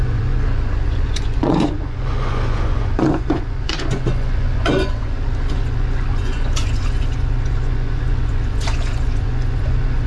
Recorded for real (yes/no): no